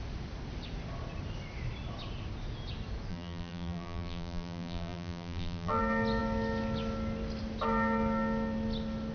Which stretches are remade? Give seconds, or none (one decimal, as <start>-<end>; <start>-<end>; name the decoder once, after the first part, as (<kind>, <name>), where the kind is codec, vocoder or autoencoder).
3.1-5.8 (vocoder, BigVGAN v2)

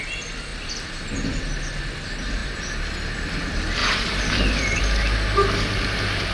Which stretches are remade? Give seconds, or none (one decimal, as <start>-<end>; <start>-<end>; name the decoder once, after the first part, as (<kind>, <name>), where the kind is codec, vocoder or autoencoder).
0.5-1.4 (vocoder, BigVGAN v2); 3.8-4.8